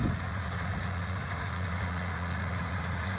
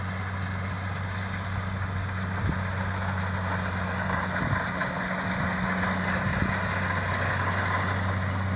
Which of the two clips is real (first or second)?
second